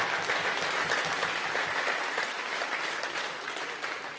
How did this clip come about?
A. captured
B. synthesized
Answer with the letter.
A